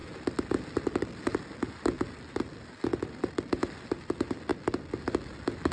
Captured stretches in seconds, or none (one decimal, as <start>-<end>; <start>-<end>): 0.0-5.7